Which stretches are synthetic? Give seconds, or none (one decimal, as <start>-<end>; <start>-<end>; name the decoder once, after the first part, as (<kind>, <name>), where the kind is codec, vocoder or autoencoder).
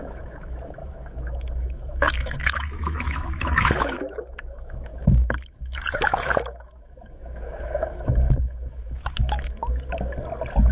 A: 0.0-9.6 (autoencoder, DAC-VAE)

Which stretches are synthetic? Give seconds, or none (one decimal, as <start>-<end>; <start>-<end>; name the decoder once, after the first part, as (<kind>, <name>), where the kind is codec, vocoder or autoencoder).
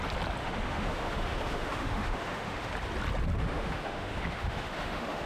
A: 0.4-2.7 (autoencoder, DAC-VAE); 3.4-5.3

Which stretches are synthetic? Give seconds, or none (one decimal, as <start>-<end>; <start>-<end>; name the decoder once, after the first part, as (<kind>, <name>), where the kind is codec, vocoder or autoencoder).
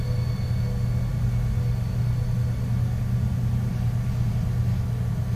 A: none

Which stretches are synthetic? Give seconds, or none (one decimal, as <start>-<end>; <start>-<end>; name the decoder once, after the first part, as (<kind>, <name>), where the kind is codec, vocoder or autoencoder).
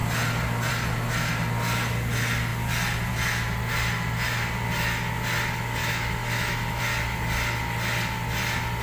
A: 5.8-6.8 (autoencoder, DAC-VAE)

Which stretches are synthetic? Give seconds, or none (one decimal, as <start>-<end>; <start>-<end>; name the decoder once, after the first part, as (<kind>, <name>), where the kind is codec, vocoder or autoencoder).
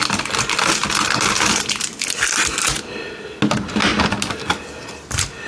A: none